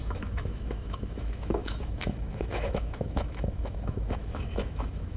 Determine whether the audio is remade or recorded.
remade